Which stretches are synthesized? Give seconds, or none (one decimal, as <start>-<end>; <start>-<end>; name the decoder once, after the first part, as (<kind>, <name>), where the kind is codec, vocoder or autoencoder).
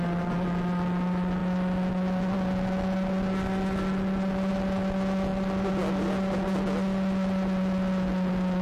none